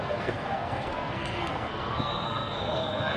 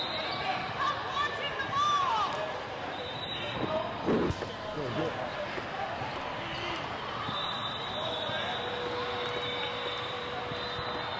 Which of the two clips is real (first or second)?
second